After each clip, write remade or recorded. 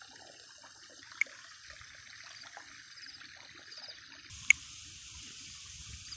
recorded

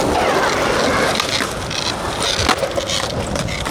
recorded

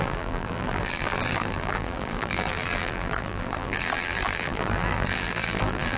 remade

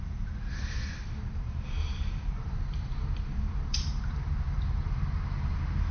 remade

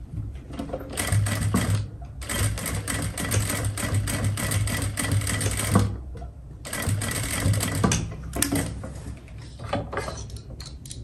recorded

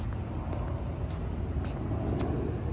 recorded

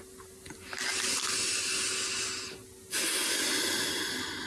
recorded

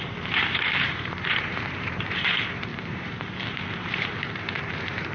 remade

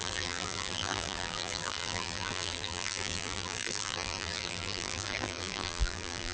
remade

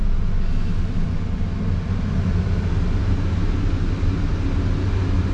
recorded